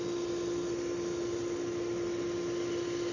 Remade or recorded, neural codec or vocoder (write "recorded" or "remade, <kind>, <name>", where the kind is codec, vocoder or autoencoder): recorded